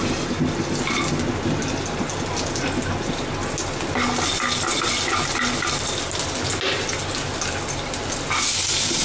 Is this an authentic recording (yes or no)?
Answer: yes